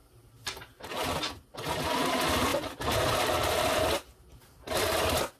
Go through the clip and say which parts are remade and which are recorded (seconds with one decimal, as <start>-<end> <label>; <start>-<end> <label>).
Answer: 0.0-1.2 remade; 1.2-2.5 recorded; 2.5-3.8 remade; 3.8-5.4 recorded